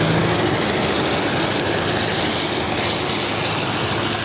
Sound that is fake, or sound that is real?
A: real